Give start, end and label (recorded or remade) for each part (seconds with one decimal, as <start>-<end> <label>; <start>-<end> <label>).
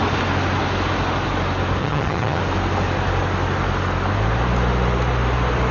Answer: 0.0-1.8 recorded; 1.8-2.4 remade; 2.4-5.7 recorded